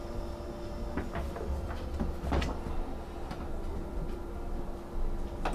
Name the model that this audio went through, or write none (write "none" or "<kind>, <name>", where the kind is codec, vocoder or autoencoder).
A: none